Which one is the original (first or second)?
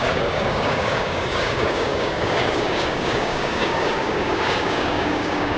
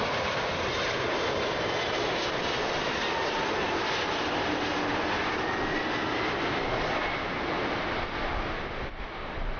second